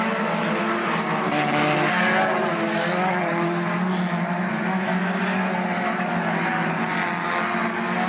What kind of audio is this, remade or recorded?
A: recorded